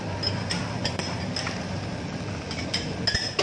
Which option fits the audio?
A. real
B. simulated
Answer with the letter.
A